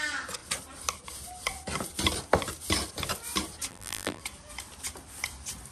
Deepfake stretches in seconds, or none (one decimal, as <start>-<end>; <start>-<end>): 3.7-4.2